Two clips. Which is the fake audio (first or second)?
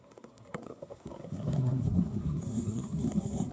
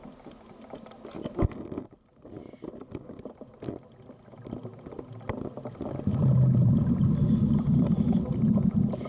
first